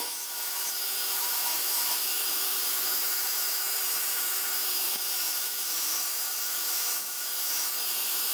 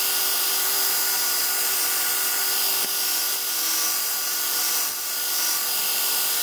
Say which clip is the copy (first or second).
first